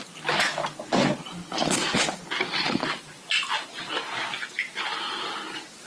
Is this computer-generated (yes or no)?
no